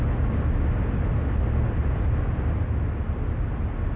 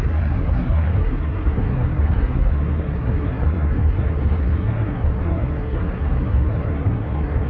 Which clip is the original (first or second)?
first